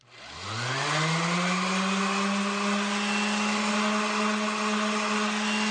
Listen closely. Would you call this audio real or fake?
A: real